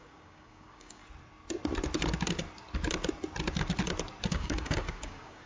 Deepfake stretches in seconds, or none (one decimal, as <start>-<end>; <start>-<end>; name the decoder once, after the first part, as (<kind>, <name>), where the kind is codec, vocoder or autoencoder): 0.0-1.0 (codec, DAC); 4.3-5.5